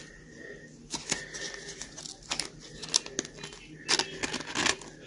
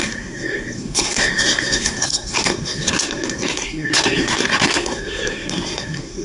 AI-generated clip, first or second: second